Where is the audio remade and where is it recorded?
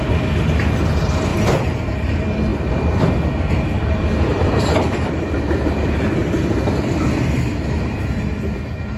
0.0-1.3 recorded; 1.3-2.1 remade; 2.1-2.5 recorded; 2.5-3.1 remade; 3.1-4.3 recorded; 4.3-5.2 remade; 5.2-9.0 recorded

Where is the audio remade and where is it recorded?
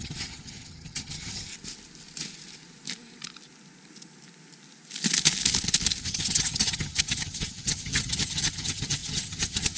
0.0-1.5 remade; 1.5-6.0 recorded; 6.0-9.8 remade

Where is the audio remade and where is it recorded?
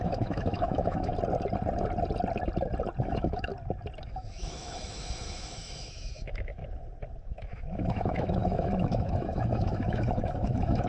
0.0-1.1 remade; 1.1-3.0 recorded; 3.0-3.5 remade; 3.5-4.1 recorded; 4.1-6.6 remade; 6.6-7.2 recorded; 7.2-10.9 remade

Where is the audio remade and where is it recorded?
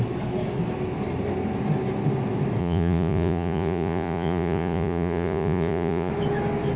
0.0-2.6 recorded; 2.6-6.1 remade; 6.1-6.8 recorded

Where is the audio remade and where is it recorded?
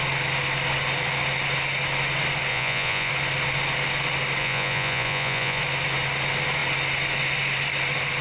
0.0-2.5 recorded; 2.5-3.1 remade; 3.1-4.4 recorded; 4.4-5.6 remade; 5.6-8.2 recorded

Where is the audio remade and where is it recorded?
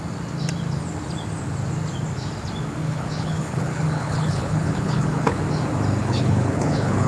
0.0-2.8 recorded; 2.8-5.4 remade; 5.4-6.0 recorded; 6.0-7.1 remade